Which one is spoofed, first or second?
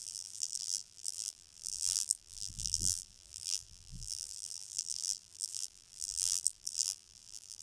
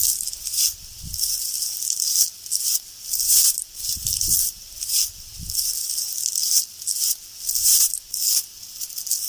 first